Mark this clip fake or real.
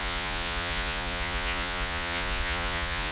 fake